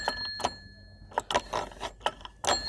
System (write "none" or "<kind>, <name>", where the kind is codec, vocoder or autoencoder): none